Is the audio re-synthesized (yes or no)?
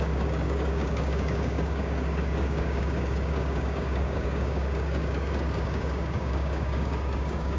yes